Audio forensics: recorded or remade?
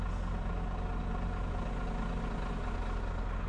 recorded